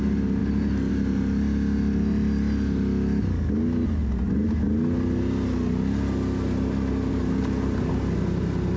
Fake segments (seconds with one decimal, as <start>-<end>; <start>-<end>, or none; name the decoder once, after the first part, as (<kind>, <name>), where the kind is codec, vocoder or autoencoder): none